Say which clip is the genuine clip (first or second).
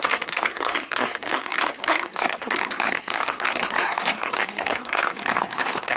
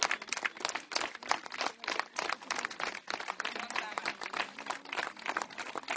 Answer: second